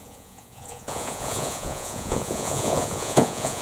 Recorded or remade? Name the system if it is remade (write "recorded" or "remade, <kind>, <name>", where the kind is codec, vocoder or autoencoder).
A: remade, vocoder, Vocos